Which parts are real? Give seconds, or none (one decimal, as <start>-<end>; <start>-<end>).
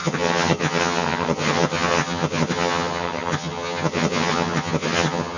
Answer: none